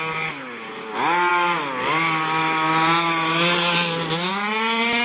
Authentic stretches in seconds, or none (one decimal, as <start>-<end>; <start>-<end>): 0.0-5.0